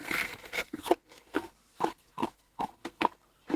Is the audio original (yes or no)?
no